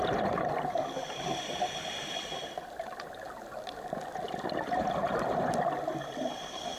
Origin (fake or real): real